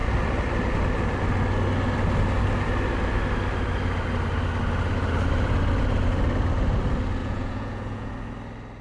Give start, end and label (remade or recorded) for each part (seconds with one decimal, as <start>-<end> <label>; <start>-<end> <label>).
0.0-7.2 recorded; 7.2-8.1 remade; 8.1-8.8 recorded